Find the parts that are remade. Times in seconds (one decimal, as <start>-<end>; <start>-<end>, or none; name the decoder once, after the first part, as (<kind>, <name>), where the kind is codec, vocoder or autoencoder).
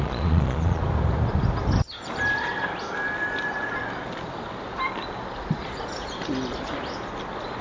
0.0-0.8 (vocoder, Vocos)